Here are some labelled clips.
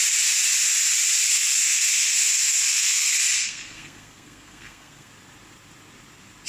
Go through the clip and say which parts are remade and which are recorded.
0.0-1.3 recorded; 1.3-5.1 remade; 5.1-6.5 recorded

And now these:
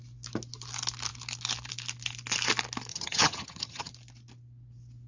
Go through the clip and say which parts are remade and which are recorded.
0.0-2.9 recorded; 2.9-3.9 remade; 3.9-5.1 recorded

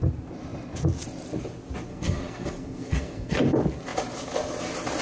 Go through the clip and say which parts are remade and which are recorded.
0.0-1.9 recorded; 1.9-3.4 remade; 3.4-5.0 recorded